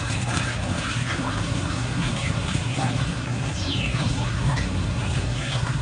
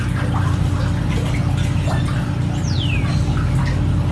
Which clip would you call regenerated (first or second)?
first